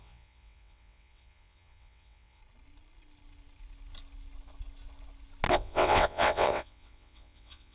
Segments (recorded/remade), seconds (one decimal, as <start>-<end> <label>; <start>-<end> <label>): 0.0-2.4 remade; 2.4-5.5 recorded; 5.5-7.7 remade